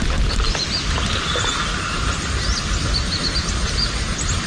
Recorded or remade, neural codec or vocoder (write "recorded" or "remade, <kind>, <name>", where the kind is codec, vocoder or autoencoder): recorded